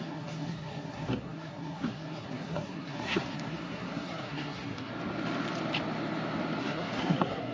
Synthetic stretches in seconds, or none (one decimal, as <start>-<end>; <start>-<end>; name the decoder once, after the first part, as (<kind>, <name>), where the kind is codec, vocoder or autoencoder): 0.0-4.9 (codec, SNAC); 6.6-7.5